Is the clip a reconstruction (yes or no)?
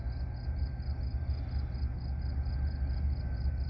no